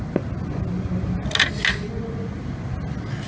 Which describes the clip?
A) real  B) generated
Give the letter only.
A